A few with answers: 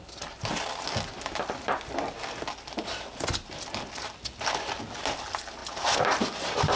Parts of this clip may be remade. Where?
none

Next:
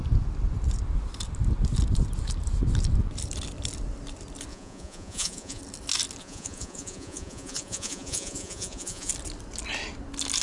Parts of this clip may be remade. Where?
4.5-5.6 (vocoder, Vocos); 6.2-9.1

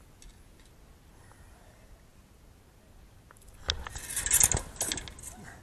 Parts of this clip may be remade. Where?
none

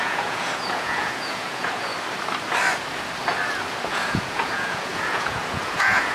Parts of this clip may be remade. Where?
0.0-1.9 (vocoder, Vocos); 3.9-6.1

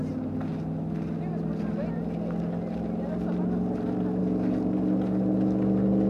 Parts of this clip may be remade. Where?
none

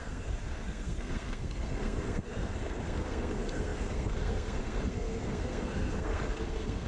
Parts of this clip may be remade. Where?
0.0-6.9 (codec, SNAC)

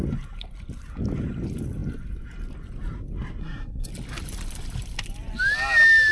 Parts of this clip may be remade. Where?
3.4-3.9 (codec, SNAC)

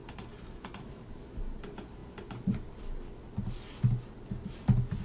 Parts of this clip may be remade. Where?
0.0-1.2 (vocoder, BigVGAN v2)